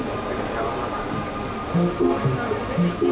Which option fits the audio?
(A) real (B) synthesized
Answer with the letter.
B